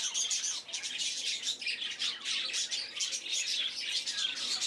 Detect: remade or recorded recorded